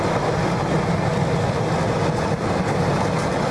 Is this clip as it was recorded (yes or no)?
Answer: yes